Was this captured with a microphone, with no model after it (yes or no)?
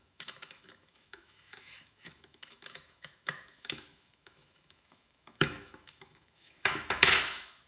no